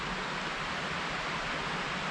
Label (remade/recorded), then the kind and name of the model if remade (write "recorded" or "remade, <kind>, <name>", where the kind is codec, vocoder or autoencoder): recorded